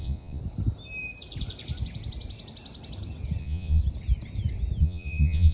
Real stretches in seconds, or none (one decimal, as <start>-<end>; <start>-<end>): 0.4-3.4; 3.8-4.8